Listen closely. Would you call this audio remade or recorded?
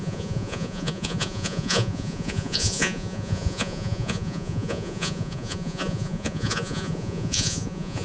remade